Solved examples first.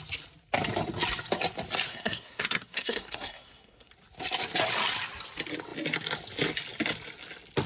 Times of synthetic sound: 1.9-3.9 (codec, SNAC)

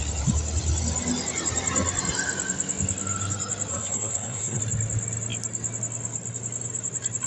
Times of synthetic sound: 3.7-4.6 (codec, SNAC)

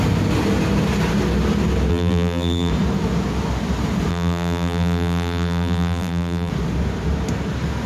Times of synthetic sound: 1.9-2.7 (vocoder, BigVGAN v2); 4.1-6.5

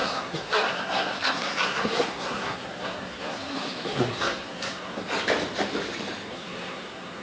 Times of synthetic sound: 0.0-5.0 (codec, SNAC); 6.3-7.2

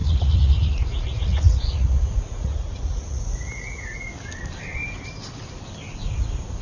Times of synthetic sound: 0.0-4.1 (vocoder, Vocos)

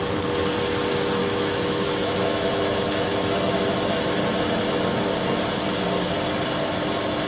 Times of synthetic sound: 1.2-3.5 (autoencoder, DAC-VAE)

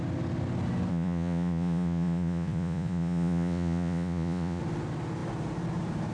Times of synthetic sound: 0.9-4.6 (vocoder, Vocos)

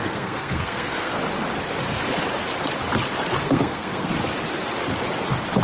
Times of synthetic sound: 0.0-1.2 (codec, SNAC); 3.4-4.1